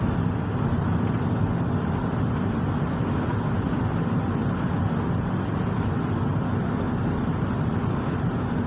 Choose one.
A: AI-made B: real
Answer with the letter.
B